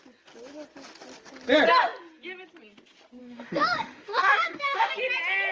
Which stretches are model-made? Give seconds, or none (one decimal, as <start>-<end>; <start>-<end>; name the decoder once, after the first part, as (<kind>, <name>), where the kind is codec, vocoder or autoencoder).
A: 3.2-4.9 (autoencoder, DAC-VAE)